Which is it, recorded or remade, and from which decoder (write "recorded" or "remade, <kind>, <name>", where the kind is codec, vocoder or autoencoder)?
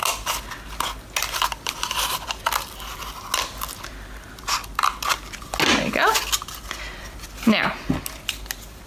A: recorded